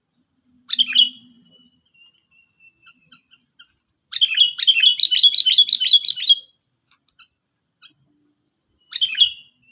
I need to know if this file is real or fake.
real